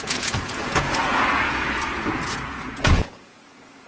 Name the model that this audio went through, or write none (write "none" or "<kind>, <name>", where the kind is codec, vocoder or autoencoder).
vocoder, Vocos